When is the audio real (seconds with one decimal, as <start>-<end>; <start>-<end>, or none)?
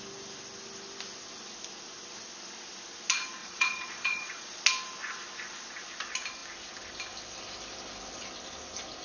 0.0-3.4; 4.6-9.0